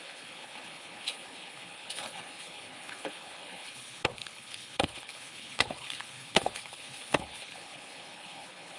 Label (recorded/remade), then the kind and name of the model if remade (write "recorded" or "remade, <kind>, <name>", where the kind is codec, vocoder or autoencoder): remade, codec, HILCodec